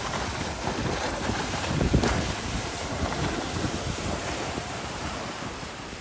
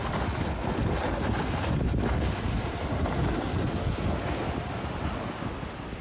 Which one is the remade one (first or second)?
first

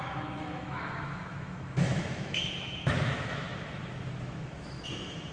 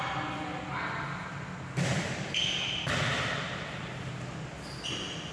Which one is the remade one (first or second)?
first